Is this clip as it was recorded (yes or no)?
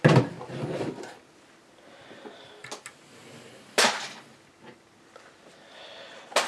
yes